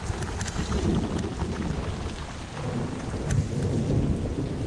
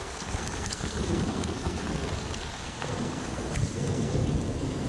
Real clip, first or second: first